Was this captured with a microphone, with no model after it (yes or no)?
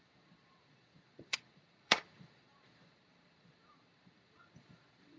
no